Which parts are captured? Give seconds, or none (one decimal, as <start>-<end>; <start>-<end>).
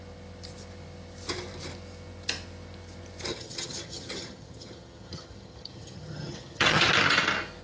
0.0-3.3; 6.9-7.6